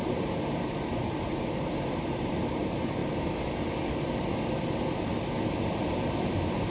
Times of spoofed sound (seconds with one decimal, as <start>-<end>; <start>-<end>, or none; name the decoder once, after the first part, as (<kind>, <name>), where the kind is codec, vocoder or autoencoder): 0.0-3.0 (vocoder, BigVGAN v2); 5.7-6.7